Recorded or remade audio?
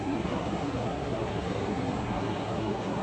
remade